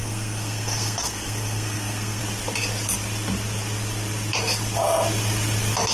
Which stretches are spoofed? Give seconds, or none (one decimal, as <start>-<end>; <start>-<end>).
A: 0.0-2.2